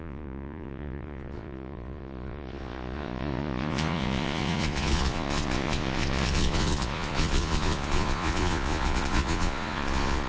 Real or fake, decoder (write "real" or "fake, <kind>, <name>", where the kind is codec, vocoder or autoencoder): fake, vocoder, Vocos